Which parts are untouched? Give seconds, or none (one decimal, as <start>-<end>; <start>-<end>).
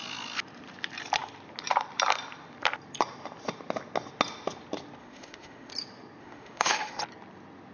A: 0.0-5.0; 5.7-6.2; 7.0-7.7